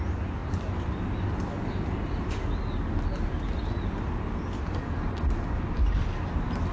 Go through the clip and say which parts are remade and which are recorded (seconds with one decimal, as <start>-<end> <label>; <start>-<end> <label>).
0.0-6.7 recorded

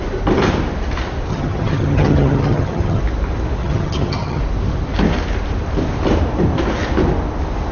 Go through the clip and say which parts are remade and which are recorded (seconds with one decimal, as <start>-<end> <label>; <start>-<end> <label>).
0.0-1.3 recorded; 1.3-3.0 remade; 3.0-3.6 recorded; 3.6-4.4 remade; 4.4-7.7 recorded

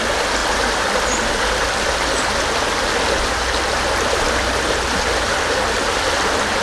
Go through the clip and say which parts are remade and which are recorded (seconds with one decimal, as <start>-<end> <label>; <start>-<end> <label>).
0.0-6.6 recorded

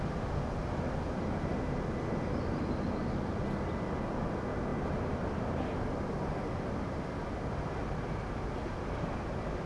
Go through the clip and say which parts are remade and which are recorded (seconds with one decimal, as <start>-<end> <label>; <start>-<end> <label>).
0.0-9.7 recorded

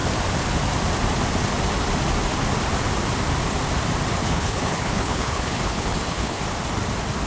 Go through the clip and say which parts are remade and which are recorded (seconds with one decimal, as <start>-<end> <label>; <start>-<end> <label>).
0.0-4.2 recorded; 4.2-6.4 remade; 6.4-7.3 recorded

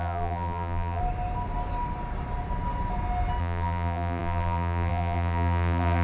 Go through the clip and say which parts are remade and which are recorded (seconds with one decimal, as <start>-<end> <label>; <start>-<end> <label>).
0.0-1.0 remade; 1.0-3.4 recorded; 3.4-6.0 remade

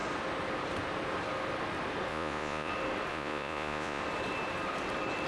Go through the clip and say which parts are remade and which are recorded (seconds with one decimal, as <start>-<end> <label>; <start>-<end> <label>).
0.0-2.1 recorded; 2.1-2.7 remade; 2.7-3.1 recorded; 3.1-4.0 remade; 4.0-5.3 recorded

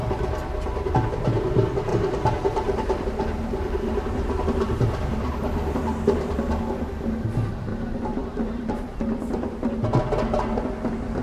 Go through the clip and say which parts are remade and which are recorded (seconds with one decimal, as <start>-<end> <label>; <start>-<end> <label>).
0.0-0.9 remade; 0.9-1.9 recorded; 1.9-6.6 remade; 6.6-7.7 recorded; 7.7-10.0 remade; 10.0-11.2 recorded